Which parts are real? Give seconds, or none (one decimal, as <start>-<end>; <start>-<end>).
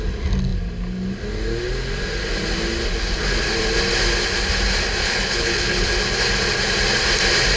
0.0-5.0; 5.9-7.6